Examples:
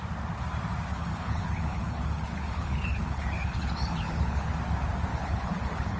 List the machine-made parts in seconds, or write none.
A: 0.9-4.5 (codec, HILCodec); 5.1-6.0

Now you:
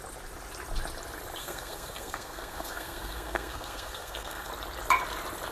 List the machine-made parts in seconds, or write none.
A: 1.4-4.5 (codec, SNAC)

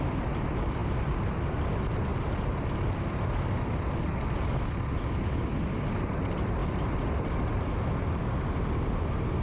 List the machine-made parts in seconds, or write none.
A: 0.8-1.5 (vocoder, BigVGAN v2)

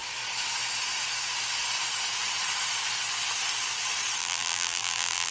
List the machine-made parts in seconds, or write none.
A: 4.2-5.3 (vocoder, BigVGAN v2)

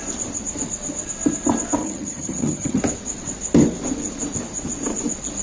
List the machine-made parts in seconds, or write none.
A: 1.8-2.8 (vocoder, HiFi-GAN)